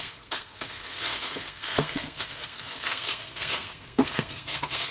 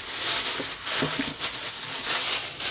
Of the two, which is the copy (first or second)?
first